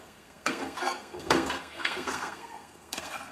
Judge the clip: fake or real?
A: fake